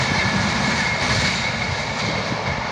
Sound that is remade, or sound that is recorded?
remade